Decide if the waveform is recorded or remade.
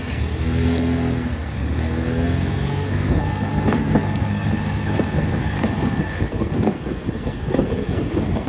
remade